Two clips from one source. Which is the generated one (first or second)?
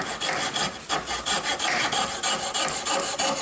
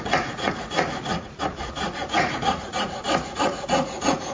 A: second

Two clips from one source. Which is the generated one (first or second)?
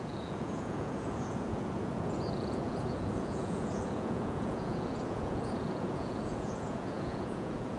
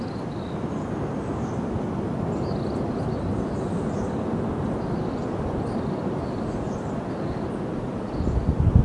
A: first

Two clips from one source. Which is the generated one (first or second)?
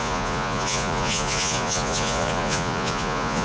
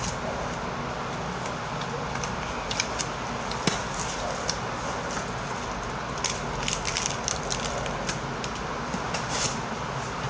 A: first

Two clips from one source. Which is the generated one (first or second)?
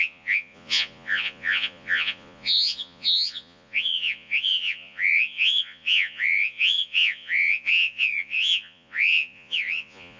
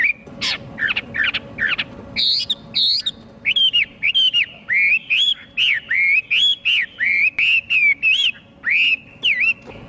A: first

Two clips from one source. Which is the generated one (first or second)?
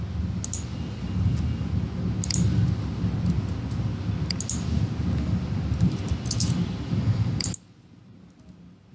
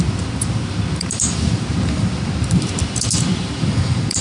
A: second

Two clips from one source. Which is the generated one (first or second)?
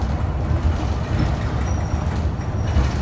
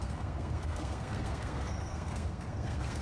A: second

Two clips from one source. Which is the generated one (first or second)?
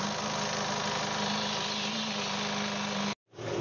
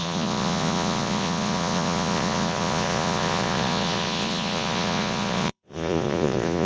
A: second